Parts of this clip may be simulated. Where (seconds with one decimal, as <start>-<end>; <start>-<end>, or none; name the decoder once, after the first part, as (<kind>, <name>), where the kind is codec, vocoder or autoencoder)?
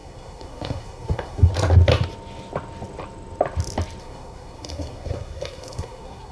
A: 0.0-1.5 (codec, SNAC); 4.0-6.3